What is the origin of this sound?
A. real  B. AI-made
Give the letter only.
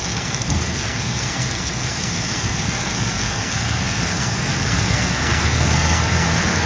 B